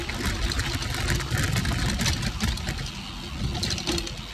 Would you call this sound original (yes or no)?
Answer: yes